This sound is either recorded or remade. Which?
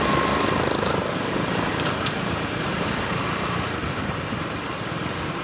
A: remade